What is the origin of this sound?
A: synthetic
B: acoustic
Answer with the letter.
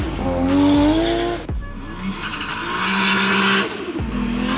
B